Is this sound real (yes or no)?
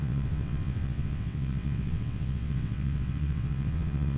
no